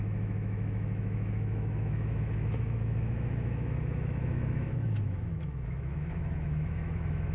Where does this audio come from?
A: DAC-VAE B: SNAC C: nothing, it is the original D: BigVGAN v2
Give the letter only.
A